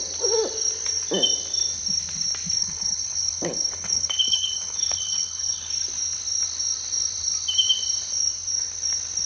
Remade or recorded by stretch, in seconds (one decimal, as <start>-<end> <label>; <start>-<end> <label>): 0.0-2.6 recorded; 2.6-5.7 remade; 5.7-9.3 recorded